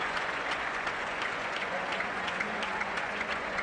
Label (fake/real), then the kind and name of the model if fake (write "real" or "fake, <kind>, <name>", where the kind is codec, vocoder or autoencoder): fake, vocoder, Vocos